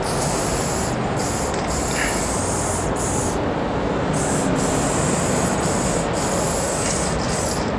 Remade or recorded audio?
recorded